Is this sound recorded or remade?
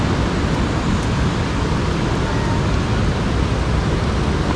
recorded